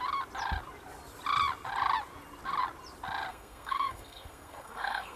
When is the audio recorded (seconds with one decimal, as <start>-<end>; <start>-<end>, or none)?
0.0-3.3